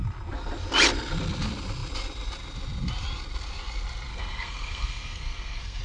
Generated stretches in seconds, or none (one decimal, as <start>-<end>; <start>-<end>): 4.1-5.8